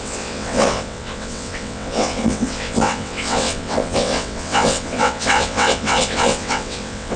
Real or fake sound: fake